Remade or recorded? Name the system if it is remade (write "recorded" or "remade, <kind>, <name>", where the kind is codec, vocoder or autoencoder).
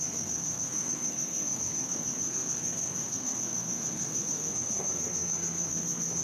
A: remade, codec, SNAC